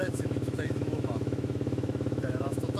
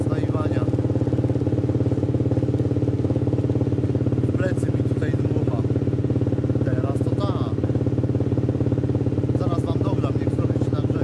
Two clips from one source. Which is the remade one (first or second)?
first